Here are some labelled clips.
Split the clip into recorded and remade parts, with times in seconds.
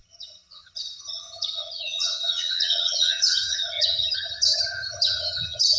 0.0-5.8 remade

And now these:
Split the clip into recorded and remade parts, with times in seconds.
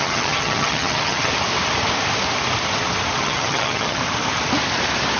0.0-1.3 remade; 1.3-3.2 recorded; 3.2-4.0 remade; 4.0-5.2 recorded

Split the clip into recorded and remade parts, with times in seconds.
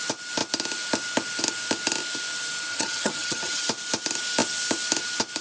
0.0-2.7 recorded; 2.7-3.6 remade; 3.6-5.4 recorded